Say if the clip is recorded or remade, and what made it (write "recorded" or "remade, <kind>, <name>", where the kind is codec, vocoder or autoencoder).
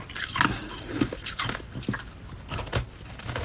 recorded